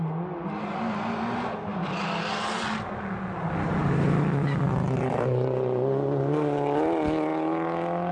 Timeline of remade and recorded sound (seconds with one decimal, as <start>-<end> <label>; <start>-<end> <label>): 0.0-8.1 recorded